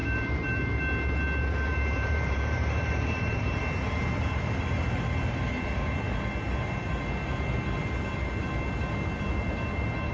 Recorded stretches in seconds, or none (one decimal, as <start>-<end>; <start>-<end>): 0.8-1.7; 3.6-10.1